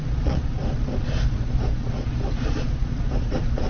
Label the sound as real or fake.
fake